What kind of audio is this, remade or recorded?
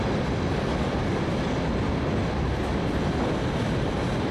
recorded